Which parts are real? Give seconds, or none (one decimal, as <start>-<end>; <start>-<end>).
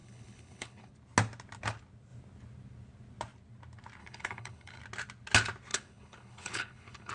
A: 0.9-4.0; 4.8-5.7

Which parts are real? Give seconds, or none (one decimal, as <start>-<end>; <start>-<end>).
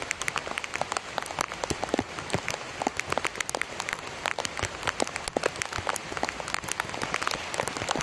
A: 0.0-8.0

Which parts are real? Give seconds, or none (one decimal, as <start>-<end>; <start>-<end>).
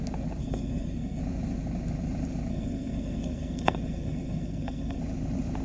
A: 0.0-0.4; 1.2-2.5; 5.0-5.6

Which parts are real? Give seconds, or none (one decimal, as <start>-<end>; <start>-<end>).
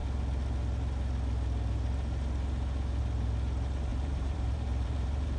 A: 0.0-3.9